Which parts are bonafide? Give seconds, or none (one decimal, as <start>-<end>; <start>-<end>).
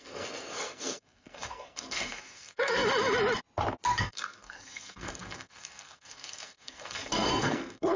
2.8-4.0